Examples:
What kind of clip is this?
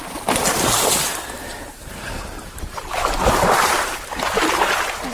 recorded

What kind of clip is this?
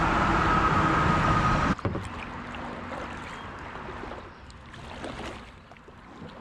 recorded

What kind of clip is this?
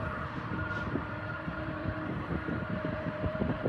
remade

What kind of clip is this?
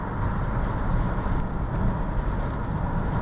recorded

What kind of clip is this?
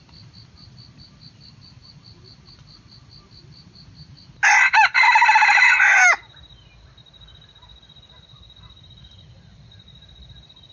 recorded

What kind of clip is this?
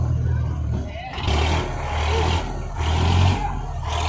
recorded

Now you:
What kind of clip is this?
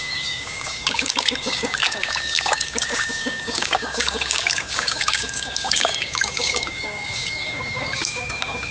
remade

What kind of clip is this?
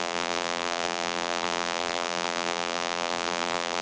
remade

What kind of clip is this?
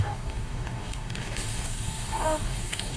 remade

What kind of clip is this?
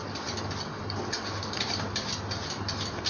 recorded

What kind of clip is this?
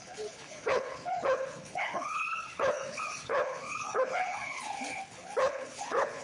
remade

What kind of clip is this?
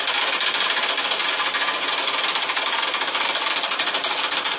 recorded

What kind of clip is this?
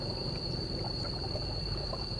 remade